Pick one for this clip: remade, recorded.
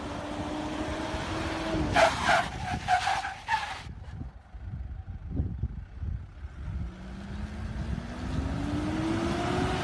recorded